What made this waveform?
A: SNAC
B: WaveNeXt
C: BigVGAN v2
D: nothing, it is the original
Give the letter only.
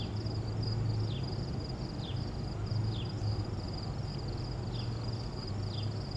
D